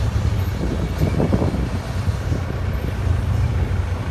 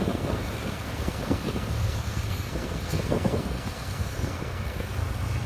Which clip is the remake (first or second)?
second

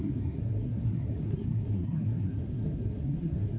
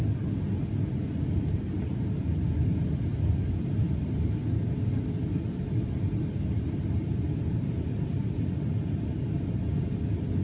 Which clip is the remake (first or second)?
first